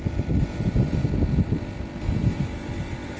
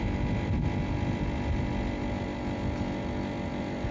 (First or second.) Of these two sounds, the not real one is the first